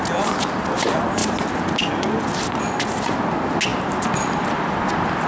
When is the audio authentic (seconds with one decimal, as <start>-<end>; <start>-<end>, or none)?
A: 0.0-3.7